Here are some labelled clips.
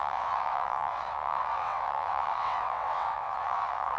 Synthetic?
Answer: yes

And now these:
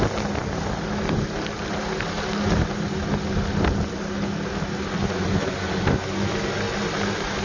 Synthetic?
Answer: no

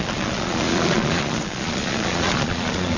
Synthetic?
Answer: yes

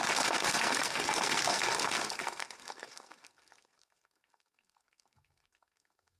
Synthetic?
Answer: yes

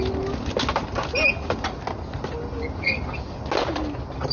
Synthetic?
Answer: no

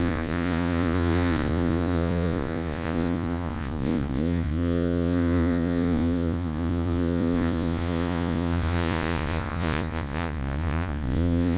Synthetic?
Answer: yes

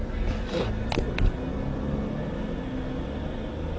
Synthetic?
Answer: no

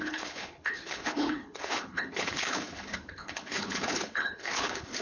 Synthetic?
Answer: yes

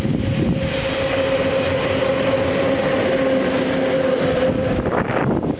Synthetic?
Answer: no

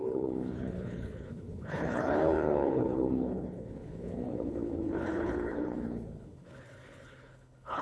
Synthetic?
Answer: yes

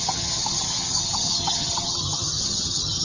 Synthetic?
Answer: yes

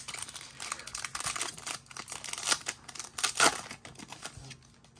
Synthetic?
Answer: no